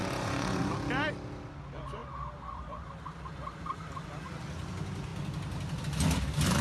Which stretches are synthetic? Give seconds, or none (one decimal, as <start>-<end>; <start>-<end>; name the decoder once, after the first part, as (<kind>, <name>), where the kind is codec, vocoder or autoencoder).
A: 0.0-0.7 (vocoder, Vocos)